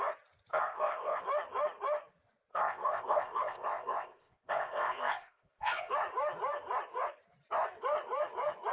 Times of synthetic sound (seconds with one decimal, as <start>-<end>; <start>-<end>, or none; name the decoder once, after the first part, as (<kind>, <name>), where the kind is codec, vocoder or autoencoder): 0.5-1.2 (codec, ZipCodec); 2.5-5.9